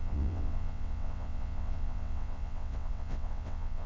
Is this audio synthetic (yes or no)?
yes